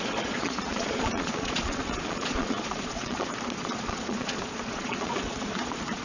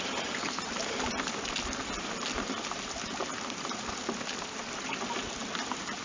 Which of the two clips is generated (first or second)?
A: first